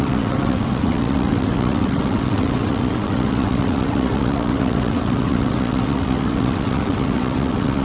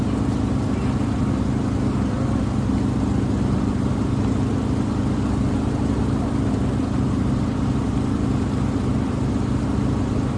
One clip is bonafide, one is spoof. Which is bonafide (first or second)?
second